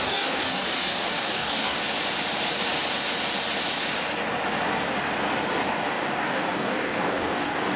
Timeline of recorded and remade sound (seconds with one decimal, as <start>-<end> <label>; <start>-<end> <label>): 0.0-1.8 remade; 1.8-5.7 recorded; 5.7-7.8 remade